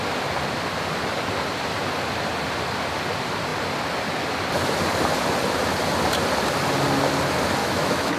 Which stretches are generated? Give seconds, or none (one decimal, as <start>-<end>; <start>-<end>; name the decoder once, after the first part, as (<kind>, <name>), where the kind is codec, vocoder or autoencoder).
7.6-8.2 (autoencoder, DAC-VAE)